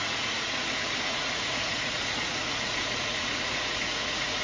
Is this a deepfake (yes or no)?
yes